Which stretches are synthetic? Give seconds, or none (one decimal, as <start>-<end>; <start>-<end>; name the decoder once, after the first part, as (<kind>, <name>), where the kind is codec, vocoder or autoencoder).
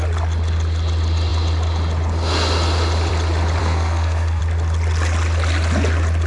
3.6-4.4 (codec, SNAC)